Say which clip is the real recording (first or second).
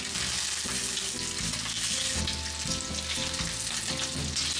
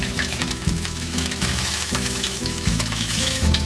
first